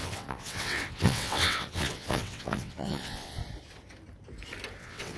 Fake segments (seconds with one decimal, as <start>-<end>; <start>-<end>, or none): 0.0-3.4; 4.8-5.2